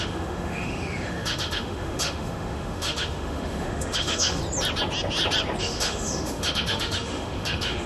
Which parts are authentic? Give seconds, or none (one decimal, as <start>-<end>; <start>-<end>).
4.4-5.6